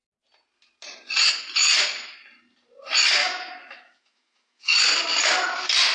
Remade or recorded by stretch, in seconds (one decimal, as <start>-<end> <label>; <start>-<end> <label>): 0.0-3.2 recorded; 3.2-4.8 remade; 4.8-5.9 recorded